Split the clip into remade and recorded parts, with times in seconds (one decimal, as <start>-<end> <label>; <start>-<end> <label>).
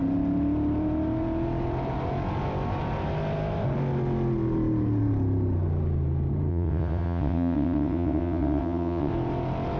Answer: 0.0-6.5 recorded; 6.5-9.1 remade; 9.1-9.8 recorded